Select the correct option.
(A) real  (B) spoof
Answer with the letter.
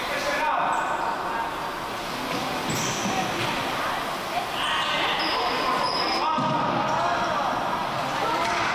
A